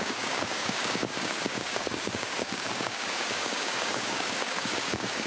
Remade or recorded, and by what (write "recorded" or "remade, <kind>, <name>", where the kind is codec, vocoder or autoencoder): remade, codec, DAC